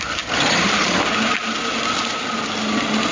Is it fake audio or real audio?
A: real